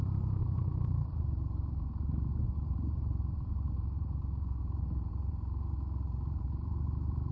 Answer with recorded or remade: remade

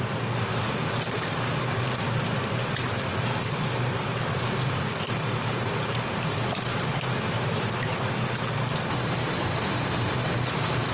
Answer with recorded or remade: remade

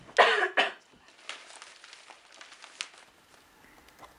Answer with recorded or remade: recorded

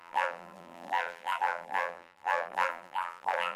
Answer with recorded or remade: remade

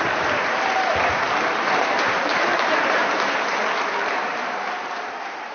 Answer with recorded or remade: remade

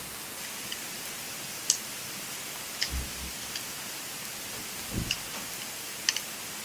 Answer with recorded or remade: recorded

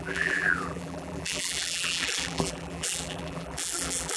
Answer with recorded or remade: remade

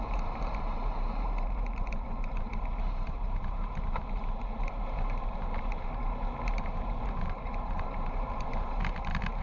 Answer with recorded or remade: remade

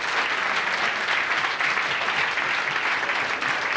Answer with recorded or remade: recorded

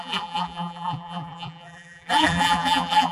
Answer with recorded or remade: remade